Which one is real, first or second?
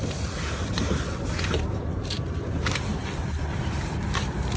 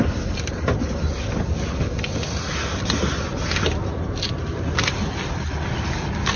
second